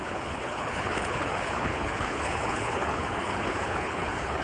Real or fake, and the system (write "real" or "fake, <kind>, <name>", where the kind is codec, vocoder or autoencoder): fake, codec, HILCodec